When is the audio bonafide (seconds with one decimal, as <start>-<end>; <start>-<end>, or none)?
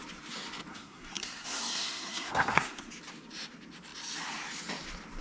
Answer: 0.0-0.7; 2.9-5.2